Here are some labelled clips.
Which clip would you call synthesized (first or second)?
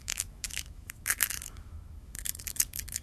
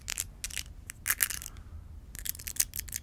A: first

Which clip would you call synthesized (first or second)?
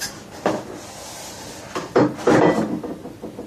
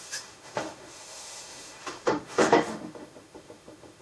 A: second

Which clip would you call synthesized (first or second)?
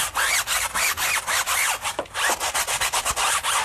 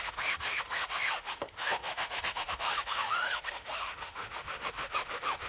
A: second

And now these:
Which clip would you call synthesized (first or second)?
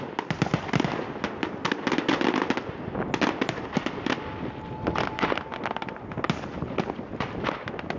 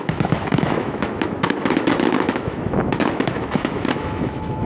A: second